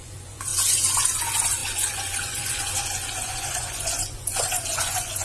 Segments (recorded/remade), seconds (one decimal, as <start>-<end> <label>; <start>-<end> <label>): 0.0-5.2 remade